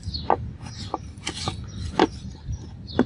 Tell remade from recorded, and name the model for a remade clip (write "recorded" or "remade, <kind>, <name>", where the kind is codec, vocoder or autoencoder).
recorded